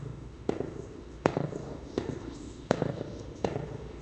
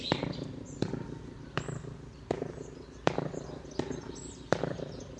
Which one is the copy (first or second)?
first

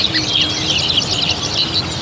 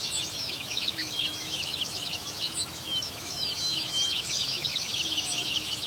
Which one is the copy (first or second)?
second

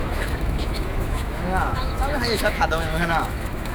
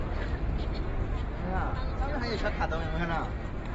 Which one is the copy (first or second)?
first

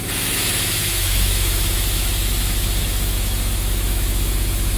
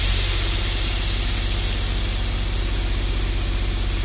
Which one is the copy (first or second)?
first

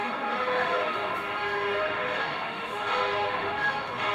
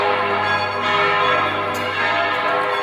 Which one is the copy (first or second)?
first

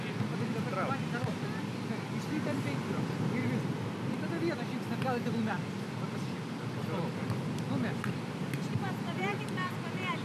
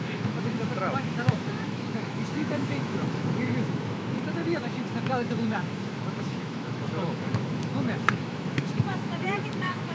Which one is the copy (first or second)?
second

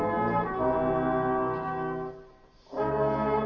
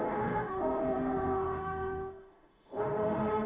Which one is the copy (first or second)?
second